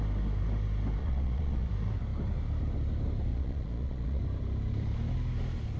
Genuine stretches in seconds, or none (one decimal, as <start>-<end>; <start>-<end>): 0.0-1.0; 1.7-3.3; 4.2-5.8